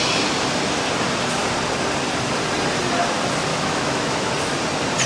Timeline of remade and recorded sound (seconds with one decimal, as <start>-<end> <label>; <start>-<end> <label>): 0.0-3.5 recorded; 3.5-4.3 remade; 4.3-5.1 recorded

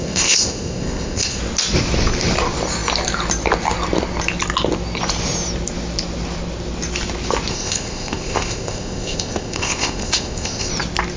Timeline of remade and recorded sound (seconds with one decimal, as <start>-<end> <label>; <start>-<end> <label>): 0.0-1.4 remade; 1.4-7.5 recorded; 7.5-10.7 remade; 10.7-11.2 recorded

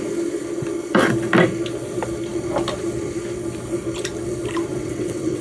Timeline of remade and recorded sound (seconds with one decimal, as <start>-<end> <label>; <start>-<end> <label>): 0.0-4.7 recorded; 4.7-5.4 remade

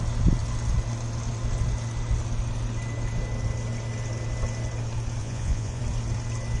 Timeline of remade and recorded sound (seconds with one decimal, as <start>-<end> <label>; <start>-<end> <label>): 0.0-5.2 recorded; 5.2-5.8 remade; 5.8-6.6 recorded

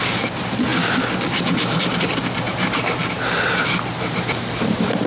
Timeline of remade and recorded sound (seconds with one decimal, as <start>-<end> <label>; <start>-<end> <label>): 0.0-5.1 recorded

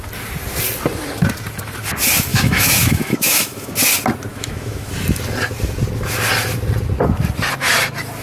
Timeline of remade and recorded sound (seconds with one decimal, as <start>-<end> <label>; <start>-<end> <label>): 0.0-2.3 recorded; 2.3-3.7 remade; 3.7-4.3 recorded; 4.3-4.9 remade; 4.9-8.2 recorded